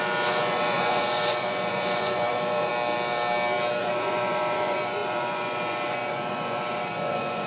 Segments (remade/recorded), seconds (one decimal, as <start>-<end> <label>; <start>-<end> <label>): 0.0-2.7 remade; 2.7-3.8 recorded; 3.8-7.5 remade